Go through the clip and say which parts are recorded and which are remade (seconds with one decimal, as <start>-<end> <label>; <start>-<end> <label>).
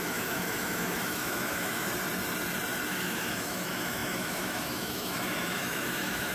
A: 0.0-1.9 remade; 1.9-2.9 recorded; 2.9-6.3 remade